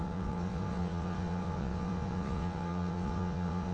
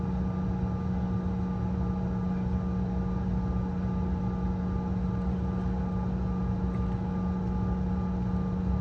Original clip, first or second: second